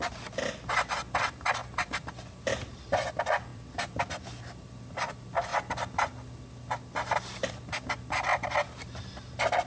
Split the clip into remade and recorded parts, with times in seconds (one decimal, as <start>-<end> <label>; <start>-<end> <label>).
0.0-1.6 recorded; 1.6-3.1 remade; 3.1-3.5 recorded; 3.5-4.1 remade; 4.1-8.3 recorded; 8.3-9.1 remade; 9.1-9.7 recorded